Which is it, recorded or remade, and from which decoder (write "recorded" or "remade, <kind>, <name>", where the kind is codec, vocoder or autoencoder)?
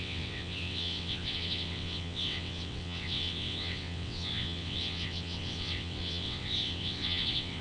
remade, vocoder, WaveNeXt